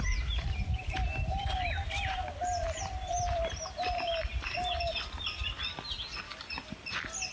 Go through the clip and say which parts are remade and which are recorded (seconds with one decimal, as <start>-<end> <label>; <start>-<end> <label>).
0.0-4.1 remade; 4.1-7.3 recorded